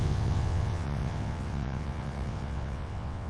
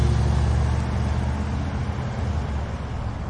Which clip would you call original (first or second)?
second